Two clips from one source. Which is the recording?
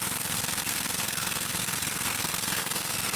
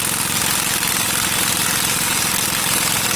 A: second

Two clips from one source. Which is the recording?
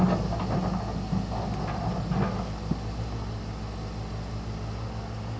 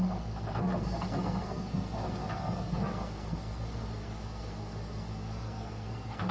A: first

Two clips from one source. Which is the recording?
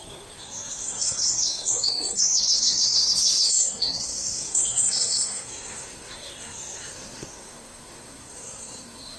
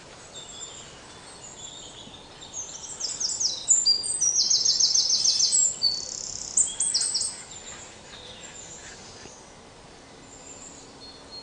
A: second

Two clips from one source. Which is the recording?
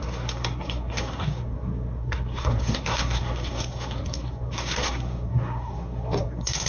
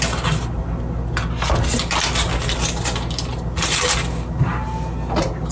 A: second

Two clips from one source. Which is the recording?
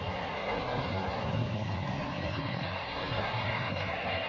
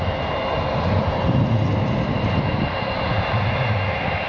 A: second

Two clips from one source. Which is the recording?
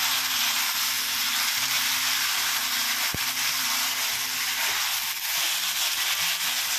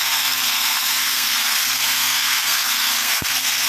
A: first